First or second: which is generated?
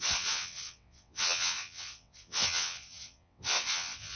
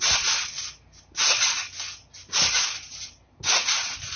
first